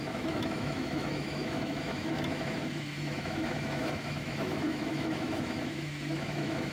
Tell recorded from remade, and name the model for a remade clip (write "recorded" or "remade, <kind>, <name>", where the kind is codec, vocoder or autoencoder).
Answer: remade, autoencoder, DAC-VAE